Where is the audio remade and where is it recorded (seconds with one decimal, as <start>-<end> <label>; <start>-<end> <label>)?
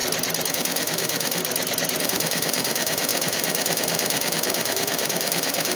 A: 0.0-0.5 recorded; 0.5-1.4 remade; 1.4-2.0 recorded; 2.0-5.8 remade